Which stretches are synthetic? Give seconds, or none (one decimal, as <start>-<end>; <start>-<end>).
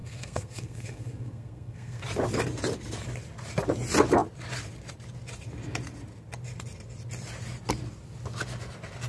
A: 0.0-2.0